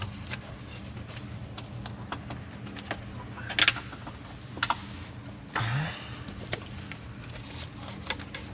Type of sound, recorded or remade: recorded